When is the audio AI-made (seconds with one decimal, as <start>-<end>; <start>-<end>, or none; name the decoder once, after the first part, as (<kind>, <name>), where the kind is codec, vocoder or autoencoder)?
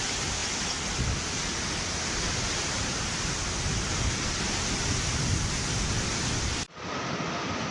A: none